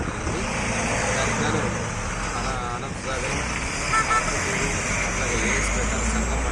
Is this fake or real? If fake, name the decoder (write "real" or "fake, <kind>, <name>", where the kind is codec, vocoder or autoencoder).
real